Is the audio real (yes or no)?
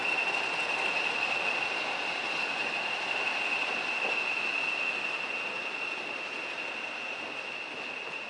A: yes